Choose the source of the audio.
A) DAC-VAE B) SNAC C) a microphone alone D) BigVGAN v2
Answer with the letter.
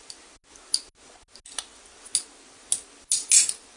C